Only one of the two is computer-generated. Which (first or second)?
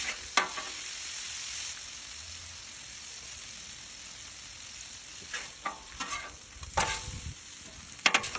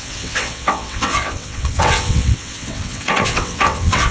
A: second